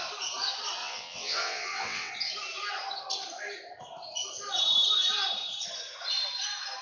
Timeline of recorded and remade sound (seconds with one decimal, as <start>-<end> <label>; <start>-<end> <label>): 0.0-0.8 recorded; 0.8-2.1 remade; 2.1-6.8 recorded